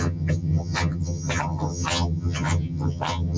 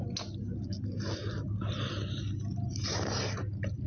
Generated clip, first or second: first